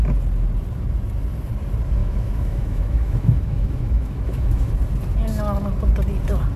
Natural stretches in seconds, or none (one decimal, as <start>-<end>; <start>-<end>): 0.0-2.0; 4.7-6.6